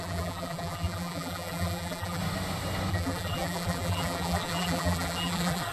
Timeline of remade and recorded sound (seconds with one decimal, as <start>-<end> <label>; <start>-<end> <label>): 0.0-2.2 remade; 2.2-2.9 recorded; 2.9-5.7 remade